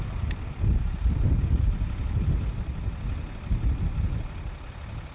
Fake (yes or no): no